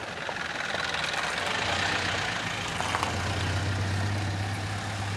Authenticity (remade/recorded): recorded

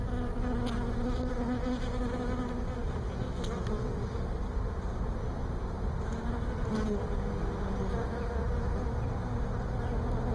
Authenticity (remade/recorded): recorded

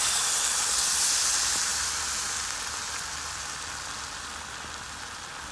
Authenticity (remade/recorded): recorded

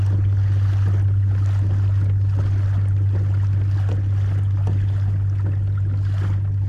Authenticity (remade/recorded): recorded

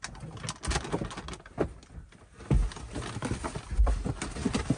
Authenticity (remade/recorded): recorded